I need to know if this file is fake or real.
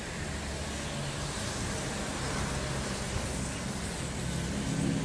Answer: real